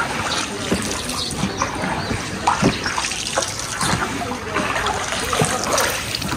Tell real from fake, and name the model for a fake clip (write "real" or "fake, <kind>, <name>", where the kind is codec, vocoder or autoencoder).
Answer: real